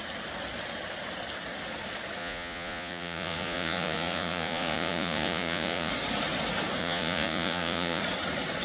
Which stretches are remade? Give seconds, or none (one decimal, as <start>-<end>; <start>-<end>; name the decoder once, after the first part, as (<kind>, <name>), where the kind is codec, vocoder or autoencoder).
2.2-5.9 (vocoder, Vocos); 6.8-8.0

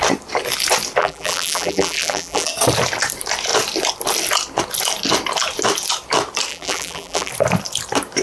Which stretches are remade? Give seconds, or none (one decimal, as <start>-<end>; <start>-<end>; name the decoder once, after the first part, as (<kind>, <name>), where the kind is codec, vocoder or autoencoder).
1.0-2.5 (vocoder, BigVGAN v2); 6.5-7.3